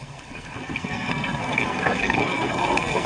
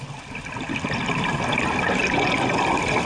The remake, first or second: first